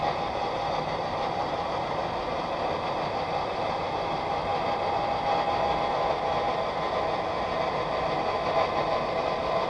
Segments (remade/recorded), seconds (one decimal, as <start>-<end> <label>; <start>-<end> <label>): 0.0-2.0 remade; 2.0-2.9 recorded; 2.9-4.5 remade; 4.5-7.7 recorded; 7.7-9.7 remade